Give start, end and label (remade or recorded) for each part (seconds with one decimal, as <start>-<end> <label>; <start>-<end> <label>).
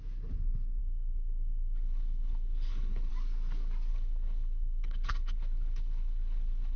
0.0-0.8 recorded; 0.8-3.1 remade; 3.1-3.9 recorded; 3.9-6.8 remade